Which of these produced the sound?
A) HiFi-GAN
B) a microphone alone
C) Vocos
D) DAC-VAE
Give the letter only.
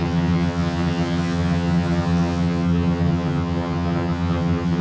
A